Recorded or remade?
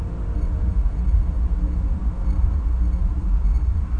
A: recorded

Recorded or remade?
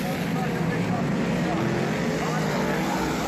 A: recorded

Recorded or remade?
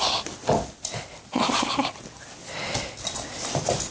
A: recorded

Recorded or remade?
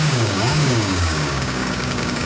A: remade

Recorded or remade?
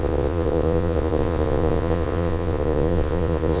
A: remade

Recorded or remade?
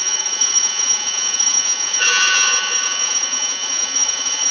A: remade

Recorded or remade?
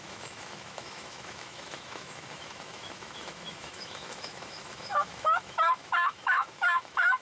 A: remade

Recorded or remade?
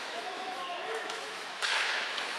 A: remade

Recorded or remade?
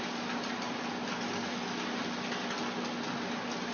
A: recorded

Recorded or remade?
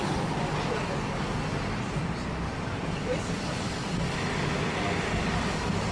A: recorded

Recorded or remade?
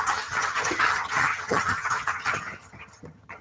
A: remade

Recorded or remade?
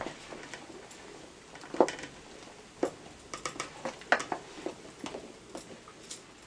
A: recorded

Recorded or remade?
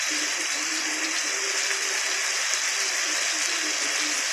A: recorded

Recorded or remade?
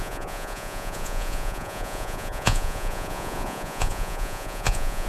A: remade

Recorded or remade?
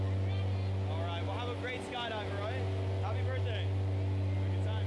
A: recorded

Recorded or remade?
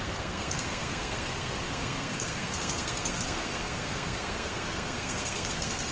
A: remade